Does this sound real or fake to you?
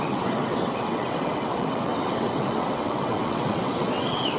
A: fake